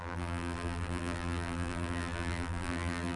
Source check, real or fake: fake